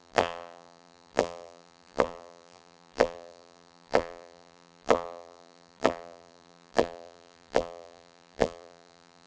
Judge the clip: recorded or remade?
remade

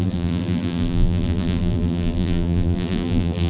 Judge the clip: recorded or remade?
remade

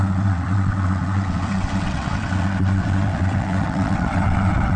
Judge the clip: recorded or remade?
remade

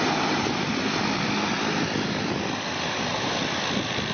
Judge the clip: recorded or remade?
recorded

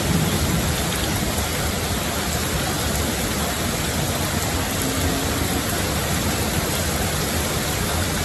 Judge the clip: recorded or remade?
recorded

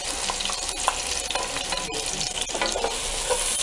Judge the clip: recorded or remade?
recorded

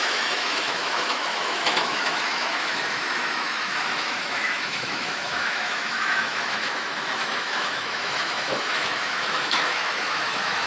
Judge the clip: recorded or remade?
remade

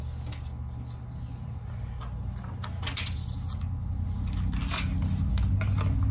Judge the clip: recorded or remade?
recorded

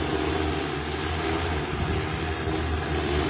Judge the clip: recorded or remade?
recorded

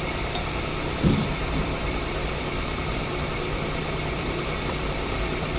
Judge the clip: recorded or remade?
remade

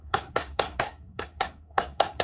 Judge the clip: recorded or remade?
remade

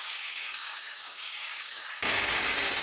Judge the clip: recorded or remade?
remade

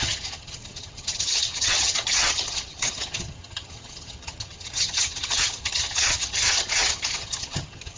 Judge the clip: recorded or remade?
remade